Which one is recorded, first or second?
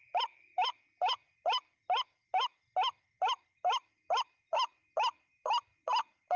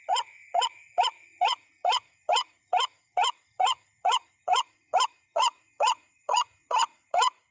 first